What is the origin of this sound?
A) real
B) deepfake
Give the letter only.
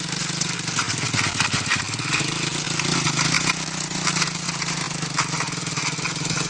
A